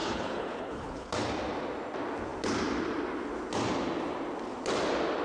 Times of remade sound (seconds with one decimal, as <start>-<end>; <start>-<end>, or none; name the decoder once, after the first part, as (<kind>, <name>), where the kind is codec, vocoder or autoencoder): 0.0-1.1 (codec, HILCodec)